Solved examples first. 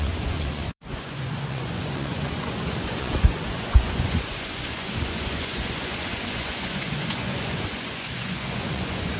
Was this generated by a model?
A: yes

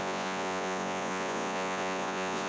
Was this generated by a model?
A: yes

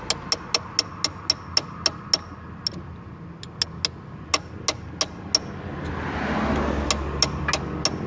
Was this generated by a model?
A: no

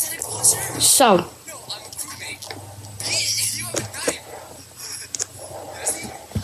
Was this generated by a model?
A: no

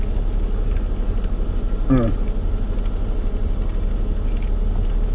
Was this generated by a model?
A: no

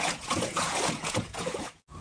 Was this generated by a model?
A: yes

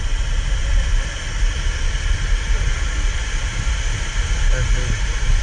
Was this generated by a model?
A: no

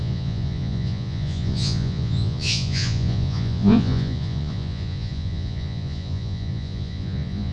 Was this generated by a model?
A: yes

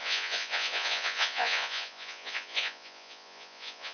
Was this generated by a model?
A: yes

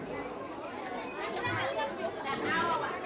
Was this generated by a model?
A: no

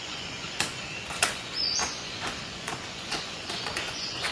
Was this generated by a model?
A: yes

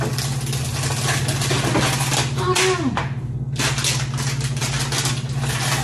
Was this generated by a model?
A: no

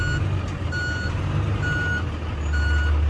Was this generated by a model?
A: no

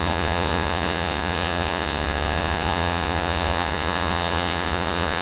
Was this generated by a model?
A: yes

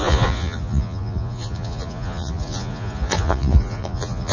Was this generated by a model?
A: yes